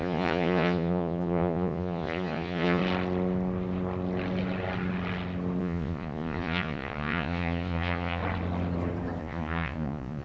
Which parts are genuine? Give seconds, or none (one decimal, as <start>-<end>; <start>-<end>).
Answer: 2.8-5.6; 8.2-9.2